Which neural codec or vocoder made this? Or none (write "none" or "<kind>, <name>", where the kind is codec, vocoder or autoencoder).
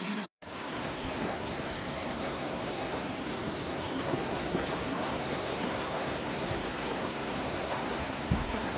codec, SNAC